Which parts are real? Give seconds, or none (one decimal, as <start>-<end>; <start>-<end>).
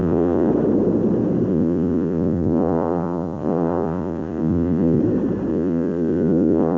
0.5-1.5; 5.0-5.5